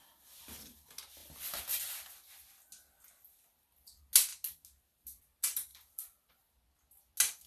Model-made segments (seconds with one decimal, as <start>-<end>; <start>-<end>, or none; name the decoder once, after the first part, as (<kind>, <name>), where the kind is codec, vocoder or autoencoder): 1.2-1.8 (vocoder, BigVGAN v2); 5.7-6.3